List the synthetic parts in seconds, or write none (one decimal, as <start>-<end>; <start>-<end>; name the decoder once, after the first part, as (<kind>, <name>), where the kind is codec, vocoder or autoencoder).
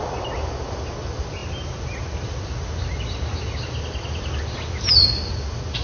0.0-1.4 (vocoder, BigVGAN v2); 4.9-5.8